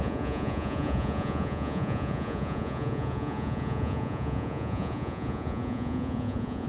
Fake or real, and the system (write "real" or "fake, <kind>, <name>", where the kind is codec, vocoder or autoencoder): fake, vocoder, Vocos